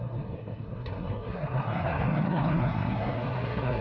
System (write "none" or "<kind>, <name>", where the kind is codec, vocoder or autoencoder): codec, SNAC